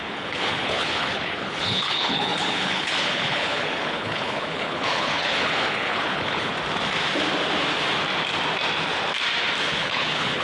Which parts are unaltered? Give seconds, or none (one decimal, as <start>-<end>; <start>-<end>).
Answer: 6.5-9.6